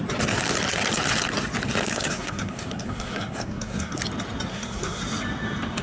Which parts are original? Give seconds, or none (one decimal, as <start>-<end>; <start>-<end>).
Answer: 0.0-1.9; 4.0-4.5; 5.0-5.8

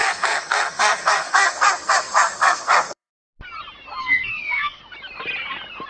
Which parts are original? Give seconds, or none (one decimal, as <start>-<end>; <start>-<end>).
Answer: 3.1-4.0; 4.8-5.9